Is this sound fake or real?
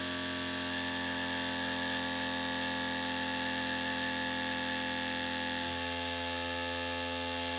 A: real